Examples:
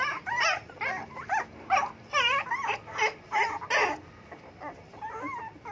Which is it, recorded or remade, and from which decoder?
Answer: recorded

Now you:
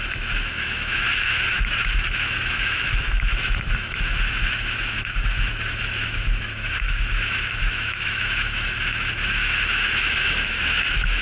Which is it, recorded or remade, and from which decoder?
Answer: remade, autoencoder, DAC-VAE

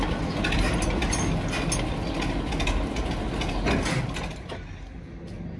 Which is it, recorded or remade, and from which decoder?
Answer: recorded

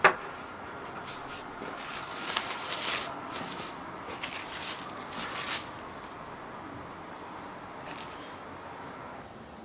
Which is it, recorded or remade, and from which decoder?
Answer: recorded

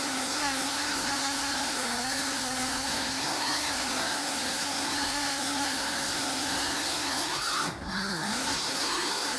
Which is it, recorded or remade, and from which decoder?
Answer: remade, codec, SNAC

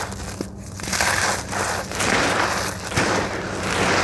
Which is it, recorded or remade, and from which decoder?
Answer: recorded